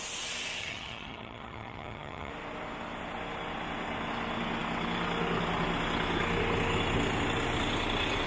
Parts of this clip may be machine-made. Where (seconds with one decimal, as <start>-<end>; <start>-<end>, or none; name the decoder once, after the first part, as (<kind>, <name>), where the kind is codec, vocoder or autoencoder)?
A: 0.6-2.3 (vocoder, HiFi-GAN)